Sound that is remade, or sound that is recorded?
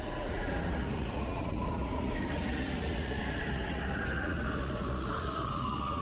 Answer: remade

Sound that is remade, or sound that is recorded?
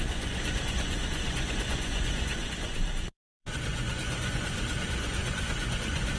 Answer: remade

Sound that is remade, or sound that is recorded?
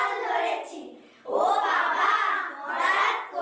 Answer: recorded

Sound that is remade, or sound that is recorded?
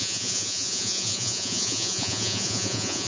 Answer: remade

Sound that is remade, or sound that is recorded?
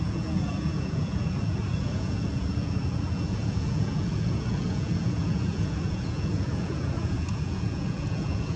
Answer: remade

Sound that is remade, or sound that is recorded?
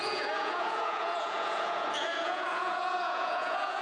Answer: remade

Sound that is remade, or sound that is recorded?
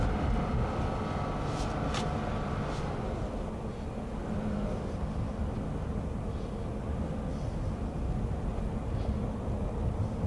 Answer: recorded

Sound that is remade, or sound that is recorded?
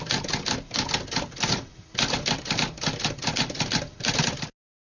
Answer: recorded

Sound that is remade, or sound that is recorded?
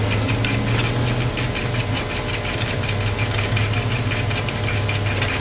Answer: recorded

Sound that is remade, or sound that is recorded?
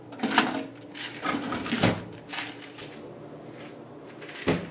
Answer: recorded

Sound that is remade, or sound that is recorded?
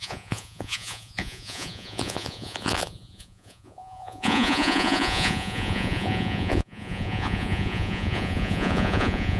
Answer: remade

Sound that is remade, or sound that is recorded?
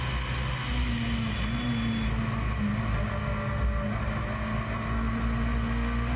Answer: recorded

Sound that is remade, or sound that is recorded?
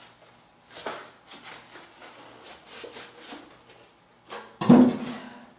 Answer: recorded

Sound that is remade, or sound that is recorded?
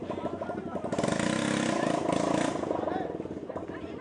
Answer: recorded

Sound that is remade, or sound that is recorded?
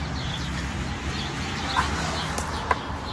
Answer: recorded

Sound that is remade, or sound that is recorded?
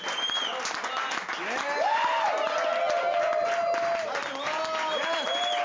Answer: recorded